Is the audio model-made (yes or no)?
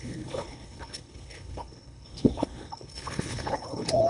yes